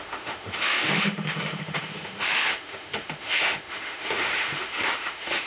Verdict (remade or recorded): remade